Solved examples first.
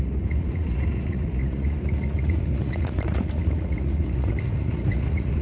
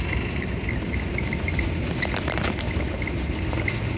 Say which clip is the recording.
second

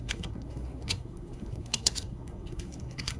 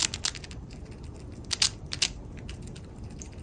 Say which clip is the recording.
second